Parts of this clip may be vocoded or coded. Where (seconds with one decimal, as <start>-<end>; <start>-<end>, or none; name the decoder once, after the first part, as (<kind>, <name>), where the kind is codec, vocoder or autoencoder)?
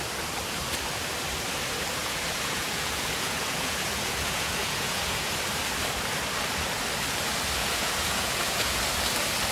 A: 2.0-5.3 (vocoder, Vocos); 7.6-8.8